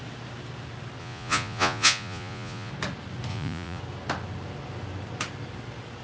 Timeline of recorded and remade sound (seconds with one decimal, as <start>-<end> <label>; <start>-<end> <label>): 0.0-1.0 recorded; 1.0-2.7 remade; 2.7-3.3 recorded; 3.3-3.8 remade; 3.8-6.0 recorded